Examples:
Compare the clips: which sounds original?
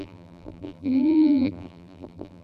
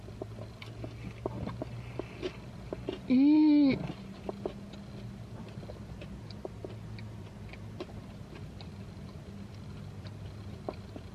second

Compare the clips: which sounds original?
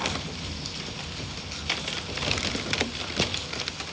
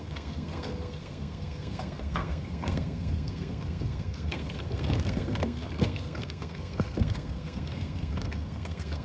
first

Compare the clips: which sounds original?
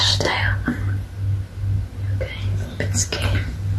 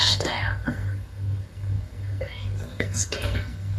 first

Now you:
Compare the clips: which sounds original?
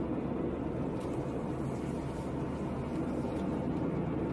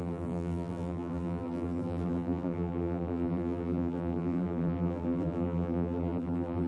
first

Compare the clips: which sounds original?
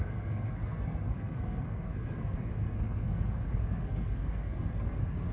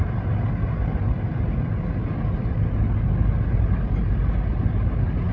second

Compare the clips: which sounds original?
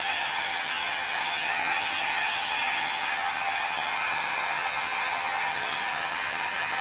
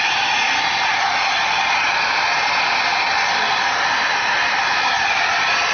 second